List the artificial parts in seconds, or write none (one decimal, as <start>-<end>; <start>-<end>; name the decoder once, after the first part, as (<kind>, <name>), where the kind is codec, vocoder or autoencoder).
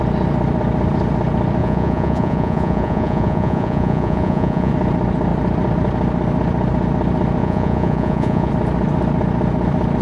1.6-4.7 (vocoder, Vocos); 7.4-8.5